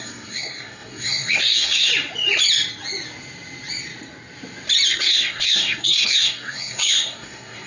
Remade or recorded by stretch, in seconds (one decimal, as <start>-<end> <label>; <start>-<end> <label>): 0.0-1.9 remade; 1.9-4.9 recorded; 4.9-7.7 remade